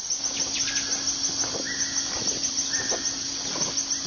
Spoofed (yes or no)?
no